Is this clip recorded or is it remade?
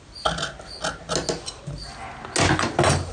recorded